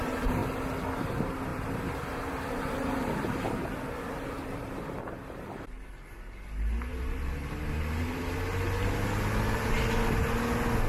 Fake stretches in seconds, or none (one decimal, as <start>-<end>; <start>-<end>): 1.5-4.7; 6.9-8.2